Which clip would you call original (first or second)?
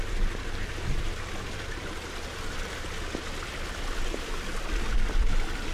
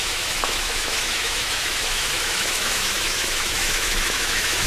first